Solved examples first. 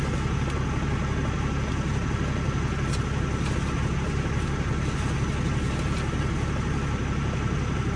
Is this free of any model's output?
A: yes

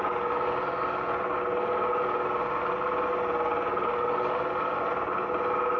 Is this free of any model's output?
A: yes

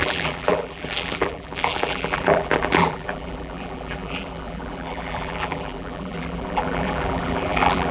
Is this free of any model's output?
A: no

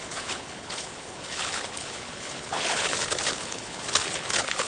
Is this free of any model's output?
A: no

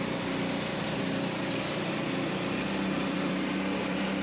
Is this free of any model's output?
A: no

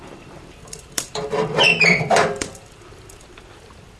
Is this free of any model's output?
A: no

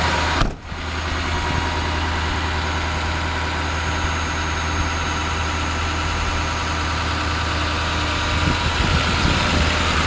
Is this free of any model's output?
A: yes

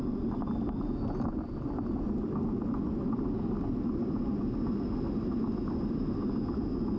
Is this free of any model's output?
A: yes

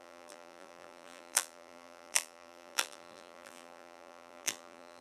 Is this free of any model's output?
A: no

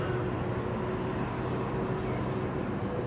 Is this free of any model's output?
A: yes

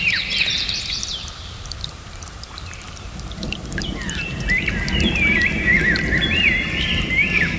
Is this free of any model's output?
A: no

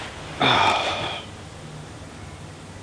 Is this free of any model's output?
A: yes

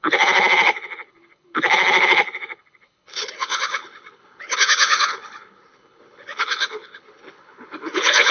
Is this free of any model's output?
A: no